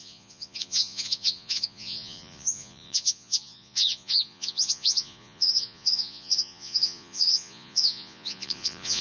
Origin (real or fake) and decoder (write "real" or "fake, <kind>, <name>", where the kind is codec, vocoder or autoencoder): fake, vocoder, Vocos